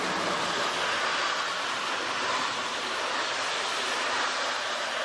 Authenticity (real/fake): real